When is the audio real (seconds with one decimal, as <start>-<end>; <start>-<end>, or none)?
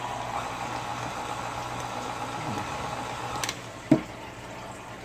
0.0-5.0